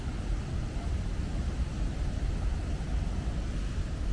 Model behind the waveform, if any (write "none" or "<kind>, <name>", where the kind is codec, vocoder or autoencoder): none